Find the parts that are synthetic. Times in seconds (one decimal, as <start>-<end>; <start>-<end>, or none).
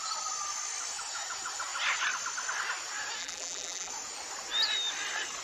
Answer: 3.2-3.9